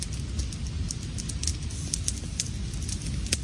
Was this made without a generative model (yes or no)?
yes